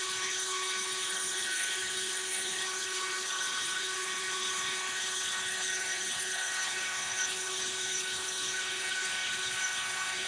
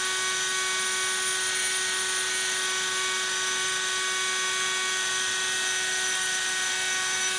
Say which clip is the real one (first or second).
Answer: second